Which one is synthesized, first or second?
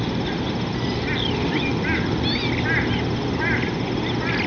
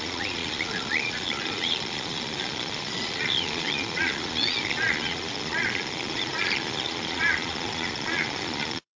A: second